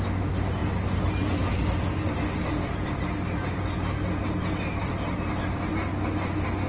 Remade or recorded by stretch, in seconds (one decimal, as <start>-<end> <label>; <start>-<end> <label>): 0.0-6.7 recorded